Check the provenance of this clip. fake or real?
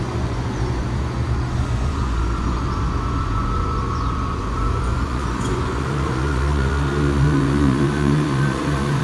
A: fake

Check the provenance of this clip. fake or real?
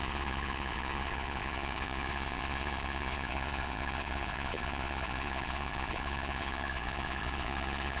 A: fake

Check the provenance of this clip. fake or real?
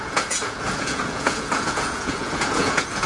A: fake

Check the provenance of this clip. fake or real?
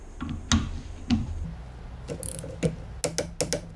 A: real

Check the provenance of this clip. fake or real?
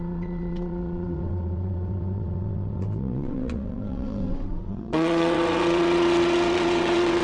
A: fake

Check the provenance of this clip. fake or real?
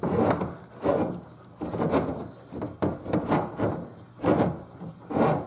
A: real